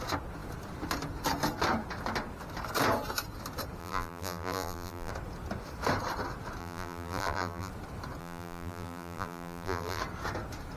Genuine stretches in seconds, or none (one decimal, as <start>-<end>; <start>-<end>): 0.0-3.8; 5.1-6.6; 7.7-8.2; 10.0-10.8